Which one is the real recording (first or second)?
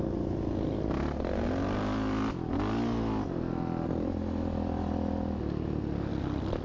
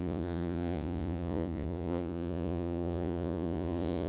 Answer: first